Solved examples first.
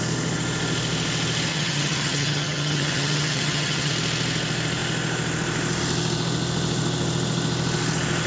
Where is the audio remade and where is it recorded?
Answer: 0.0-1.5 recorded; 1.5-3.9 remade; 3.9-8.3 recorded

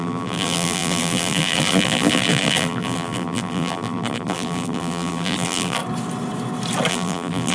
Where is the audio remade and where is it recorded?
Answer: 0.0-5.8 remade; 5.8-6.9 recorded; 6.9-7.5 remade

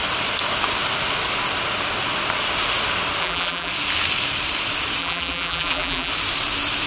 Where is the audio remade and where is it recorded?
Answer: 0.0-3.2 recorded; 3.2-3.7 remade; 3.7-5.0 recorded; 5.0-6.1 remade; 6.1-6.9 recorded

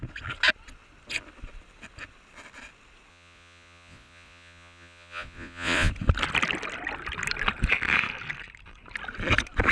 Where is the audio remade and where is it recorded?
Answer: 0.0-3.1 recorded; 3.1-5.9 remade; 5.9-9.7 recorded

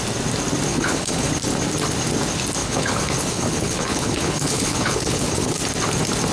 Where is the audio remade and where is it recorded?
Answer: 0.0-0.7 recorded; 0.7-1.3 remade; 1.3-2.6 recorded; 2.6-5.6 remade; 5.6-6.3 recorded